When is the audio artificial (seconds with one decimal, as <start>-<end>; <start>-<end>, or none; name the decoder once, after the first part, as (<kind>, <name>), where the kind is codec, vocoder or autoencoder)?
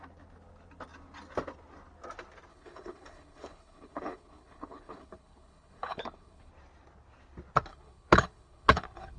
2.5-6.5 (codec, HILCodec); 7.7-9.2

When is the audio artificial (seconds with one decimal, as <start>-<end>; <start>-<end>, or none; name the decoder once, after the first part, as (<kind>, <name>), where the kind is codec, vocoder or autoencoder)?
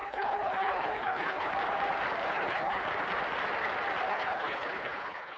0.0-1.5 (codec, HILCodec); 2.2-2.8; 4.1-5.4